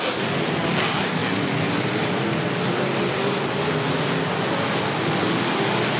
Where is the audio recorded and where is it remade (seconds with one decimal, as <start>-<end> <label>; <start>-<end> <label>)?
0.0-6.0 recorded